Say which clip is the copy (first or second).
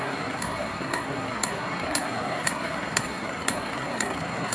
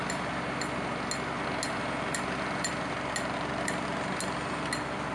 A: first